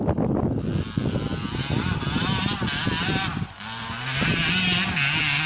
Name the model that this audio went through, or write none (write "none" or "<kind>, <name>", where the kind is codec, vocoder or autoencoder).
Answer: none